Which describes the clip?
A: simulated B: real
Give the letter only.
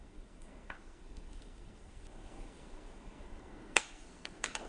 A